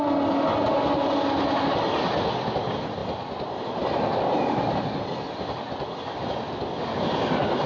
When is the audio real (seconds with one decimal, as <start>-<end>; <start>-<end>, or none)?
0.0-7.7